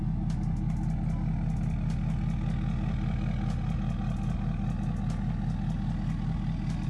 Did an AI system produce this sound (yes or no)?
no